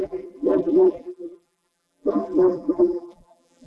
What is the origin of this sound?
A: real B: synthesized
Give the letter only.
B